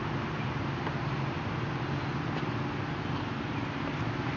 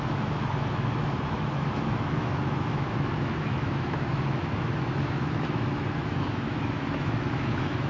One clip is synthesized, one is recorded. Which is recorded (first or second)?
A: first